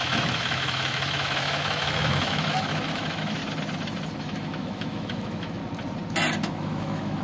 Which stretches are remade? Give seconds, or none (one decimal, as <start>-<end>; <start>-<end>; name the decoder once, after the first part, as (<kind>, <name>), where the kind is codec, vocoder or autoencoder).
0.0-3.4 (autoencoder, DAC-VAE); 4.2-5.6; 6.4-7.2